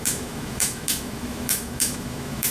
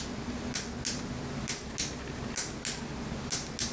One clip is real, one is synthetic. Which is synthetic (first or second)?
first